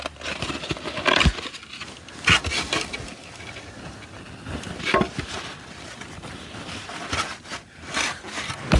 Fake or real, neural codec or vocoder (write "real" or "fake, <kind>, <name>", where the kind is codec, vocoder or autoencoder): real